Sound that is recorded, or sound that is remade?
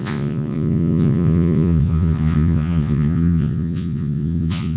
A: remade